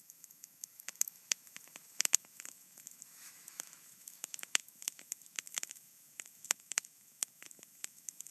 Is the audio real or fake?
fake